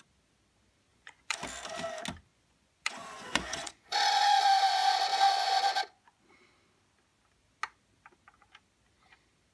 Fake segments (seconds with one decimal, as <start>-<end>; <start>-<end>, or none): 0.9-1.4; 2.3-4.4; 5.1-6.2